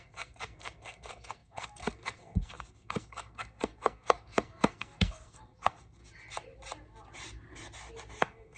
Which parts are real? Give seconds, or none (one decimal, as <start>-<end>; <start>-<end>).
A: 6.0-8.2